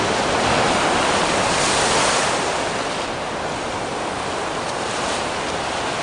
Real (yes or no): yes